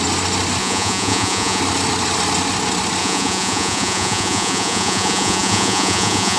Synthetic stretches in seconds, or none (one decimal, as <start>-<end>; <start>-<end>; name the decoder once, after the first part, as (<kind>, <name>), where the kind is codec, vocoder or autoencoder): 0.6-1.6 (vocoder, Vocos); 3.0-6.4